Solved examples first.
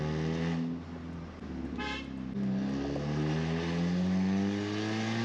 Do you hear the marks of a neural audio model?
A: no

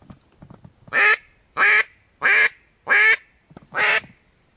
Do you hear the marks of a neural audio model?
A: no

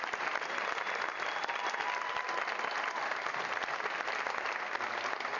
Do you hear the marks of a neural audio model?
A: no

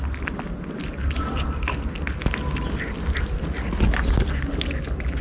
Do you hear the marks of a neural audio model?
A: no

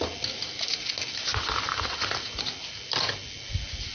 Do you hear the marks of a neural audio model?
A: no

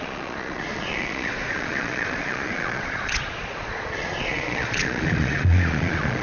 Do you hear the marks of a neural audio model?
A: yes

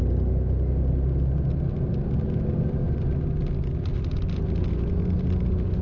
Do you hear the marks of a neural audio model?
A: no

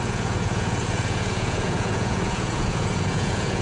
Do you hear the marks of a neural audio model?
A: yes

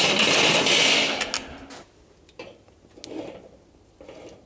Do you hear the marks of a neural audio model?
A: no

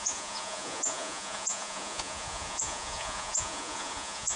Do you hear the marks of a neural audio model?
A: yes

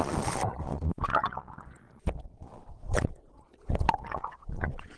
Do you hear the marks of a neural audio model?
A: yes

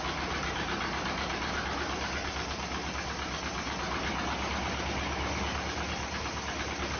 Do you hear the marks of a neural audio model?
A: no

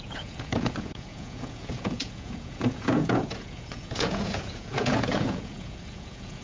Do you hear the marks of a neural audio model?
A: yes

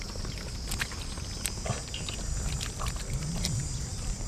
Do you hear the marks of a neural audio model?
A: no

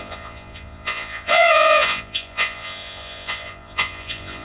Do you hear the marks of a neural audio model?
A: yes